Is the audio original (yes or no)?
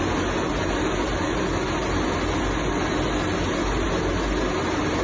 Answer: yes